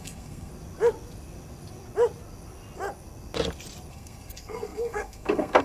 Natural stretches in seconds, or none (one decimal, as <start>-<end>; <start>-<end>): 0.5-3.9